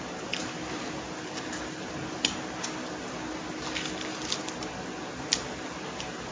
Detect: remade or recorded recorded